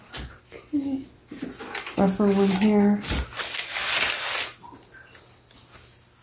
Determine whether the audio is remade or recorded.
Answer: recorded